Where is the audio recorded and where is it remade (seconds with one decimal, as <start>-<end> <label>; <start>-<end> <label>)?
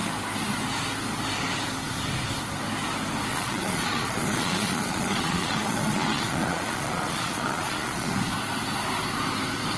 0.0-3.3 recorded; 3.3-8.1 remade; 8.1-9.8 recorded